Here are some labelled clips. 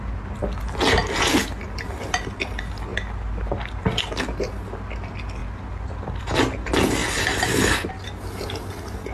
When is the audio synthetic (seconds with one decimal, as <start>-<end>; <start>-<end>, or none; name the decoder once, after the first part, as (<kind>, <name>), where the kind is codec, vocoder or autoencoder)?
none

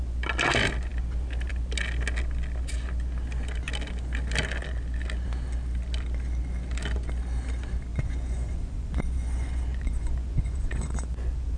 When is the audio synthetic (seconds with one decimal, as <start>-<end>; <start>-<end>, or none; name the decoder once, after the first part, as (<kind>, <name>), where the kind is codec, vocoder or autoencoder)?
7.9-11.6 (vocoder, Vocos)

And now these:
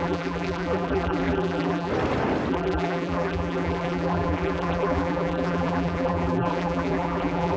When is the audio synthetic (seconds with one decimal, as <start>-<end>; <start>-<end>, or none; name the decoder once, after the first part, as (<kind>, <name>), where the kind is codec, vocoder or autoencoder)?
0.0-1.9 (vocoder, BigVGAN v2); 2.5-7.6